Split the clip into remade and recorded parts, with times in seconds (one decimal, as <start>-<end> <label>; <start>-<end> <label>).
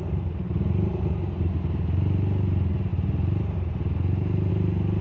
0.0-5.0 recorded